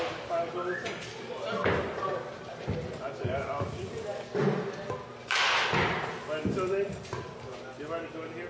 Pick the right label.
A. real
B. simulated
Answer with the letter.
A